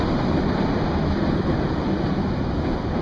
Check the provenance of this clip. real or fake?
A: real